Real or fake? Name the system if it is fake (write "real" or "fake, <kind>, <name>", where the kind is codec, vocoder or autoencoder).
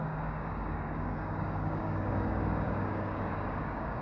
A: fake, codec, DAC